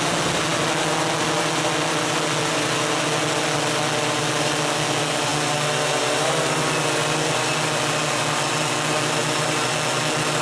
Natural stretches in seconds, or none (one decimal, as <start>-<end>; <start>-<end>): 0.0-10.4